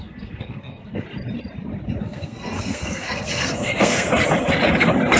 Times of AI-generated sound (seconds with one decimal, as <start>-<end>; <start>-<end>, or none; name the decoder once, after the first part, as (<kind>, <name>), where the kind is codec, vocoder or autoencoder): 0.0-1.0 (codec, SNAC); 2.0-4.1

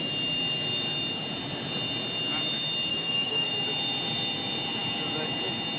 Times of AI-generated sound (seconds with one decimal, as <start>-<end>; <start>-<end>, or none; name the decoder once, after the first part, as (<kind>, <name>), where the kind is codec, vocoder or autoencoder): 2.9-3.5 (codec, SNAC)

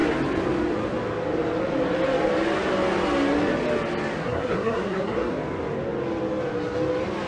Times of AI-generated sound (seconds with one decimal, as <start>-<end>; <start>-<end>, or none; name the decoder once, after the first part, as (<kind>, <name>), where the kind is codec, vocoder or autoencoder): 4.2-5.3 (codec, SNAC)